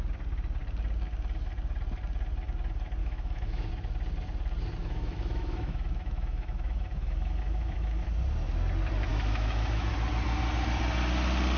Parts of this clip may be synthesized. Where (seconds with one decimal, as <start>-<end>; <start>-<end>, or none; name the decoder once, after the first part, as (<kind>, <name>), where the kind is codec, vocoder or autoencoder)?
3.0-3.7 (autoencoder, DAC-VAE); 4.8-8.1; 9.1-9.9